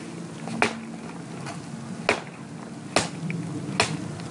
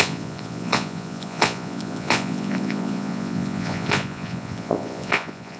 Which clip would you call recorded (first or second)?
first